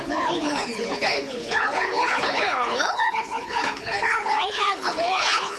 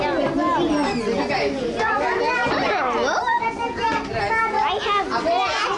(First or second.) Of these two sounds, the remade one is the first